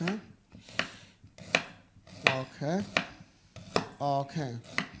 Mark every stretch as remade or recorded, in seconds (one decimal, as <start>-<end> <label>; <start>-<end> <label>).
0.0-5.0 recorded